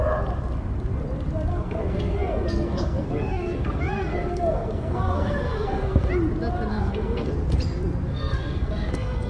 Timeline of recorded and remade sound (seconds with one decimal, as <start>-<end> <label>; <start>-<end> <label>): 0.0-1.5 recorded; 1.5-6.1 remade; 6.1-6.7 recorded; 6.7-7.3 remade; 7.3-8.1 recorded; 8.1-9.3 remade

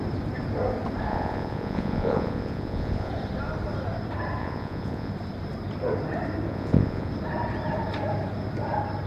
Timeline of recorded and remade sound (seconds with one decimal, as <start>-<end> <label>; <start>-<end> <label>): 0.0-1.1 recorded; 1.1-3.1 remade; 3.1-4.4 recorded; 4.4-5.1 remade; 5.1-6.5 recorded; 6.5-7.1 remade; 7.1-9.1 recorded

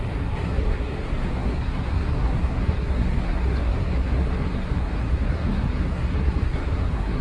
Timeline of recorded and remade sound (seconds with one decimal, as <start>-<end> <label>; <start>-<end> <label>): 0.0-7.2 remade

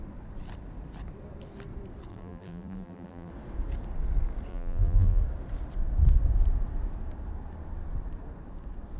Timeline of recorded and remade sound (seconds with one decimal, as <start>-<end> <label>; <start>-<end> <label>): 0.0-2.1 recorded; 2.1-3.3 remade; 3.3-4.5 recorded; 4.5-5.2 remade; 5.2-9.0 recorded

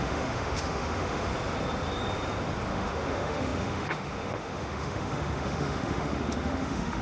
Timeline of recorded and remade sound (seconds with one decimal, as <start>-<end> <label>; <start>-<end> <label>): 0.0-1.3 remade; 1.3-2.7 recorded; 2.7-7.0 remade